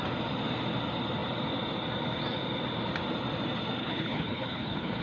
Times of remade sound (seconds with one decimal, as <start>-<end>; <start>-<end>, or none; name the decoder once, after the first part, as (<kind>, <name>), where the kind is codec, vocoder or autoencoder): 3.8-5.0 (codec, HILCodec)